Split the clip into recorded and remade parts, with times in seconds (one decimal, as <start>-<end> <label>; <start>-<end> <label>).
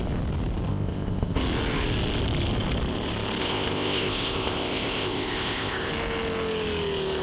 0.0-0.7 recorded; 0.7-1.4 remade; 1.4-3.4 recorded; 3.4-5.9 remade; 5.9-7.2 recorded